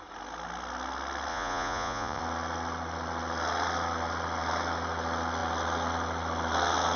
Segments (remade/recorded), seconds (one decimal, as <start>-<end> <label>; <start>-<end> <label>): 0.0-1.3 recorded; 1.3-2.2 remade; 2.2-7.0 recorded